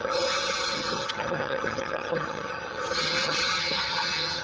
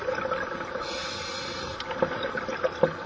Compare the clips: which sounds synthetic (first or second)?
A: first